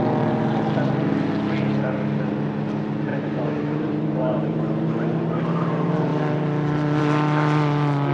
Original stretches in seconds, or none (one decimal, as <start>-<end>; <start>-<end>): 0.0-3.1; 4.6-8.1